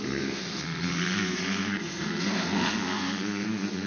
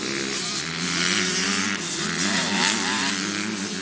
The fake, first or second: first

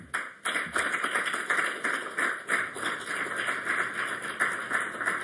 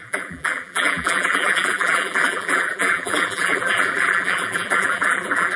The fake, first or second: second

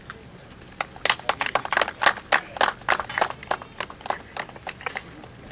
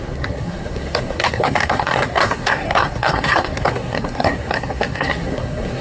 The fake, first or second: second